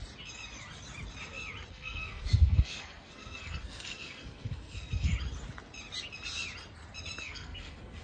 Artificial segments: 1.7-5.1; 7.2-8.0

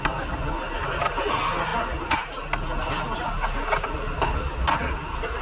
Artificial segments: none

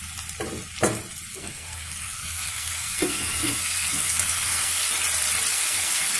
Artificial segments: 1.3-4.9; 5.5-6.2

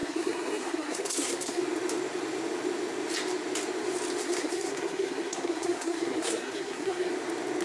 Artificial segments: 0.0-1.6; 4.2-7.1

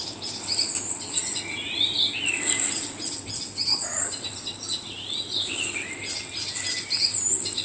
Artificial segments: none

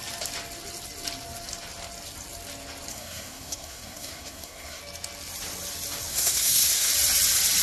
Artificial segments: 2.9-4.8; 6.1-6.9

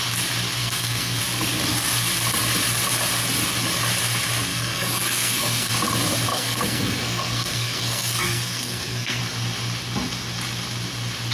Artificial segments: 0.6-1.2; 4.5-5.7; 6.3-9.2

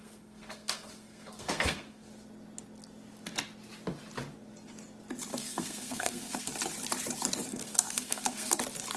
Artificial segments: 0.0-2.1; 5.3-6.5; 7.5-8.6